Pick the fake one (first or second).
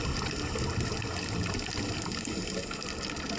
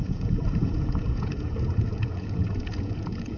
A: second